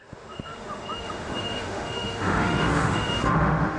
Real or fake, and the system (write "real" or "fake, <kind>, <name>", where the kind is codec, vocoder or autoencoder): fake, autoencoder, DAC-VAE